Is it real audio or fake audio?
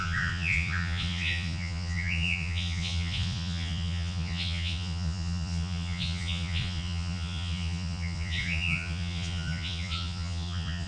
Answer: fake